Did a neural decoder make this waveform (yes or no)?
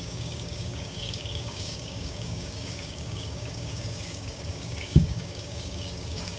yes